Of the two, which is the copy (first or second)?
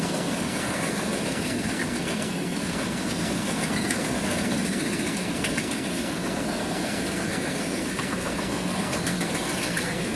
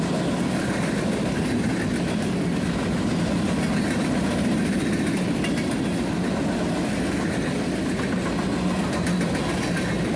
first